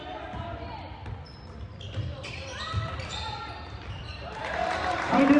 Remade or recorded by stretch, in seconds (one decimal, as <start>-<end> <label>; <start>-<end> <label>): 0.0-5.4 recorded